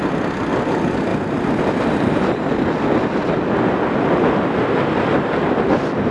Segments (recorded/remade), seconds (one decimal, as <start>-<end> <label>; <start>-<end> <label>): 0.0-6.1 recorded